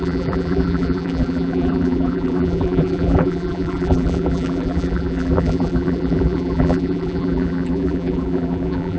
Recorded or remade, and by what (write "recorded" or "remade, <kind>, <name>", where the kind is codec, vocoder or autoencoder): remade, vocoder, BigVGAN v2